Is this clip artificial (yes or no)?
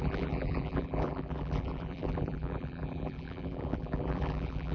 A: yes